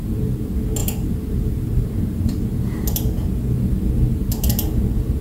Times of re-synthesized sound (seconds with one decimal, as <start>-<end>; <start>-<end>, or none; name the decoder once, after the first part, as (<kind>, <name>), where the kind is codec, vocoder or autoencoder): none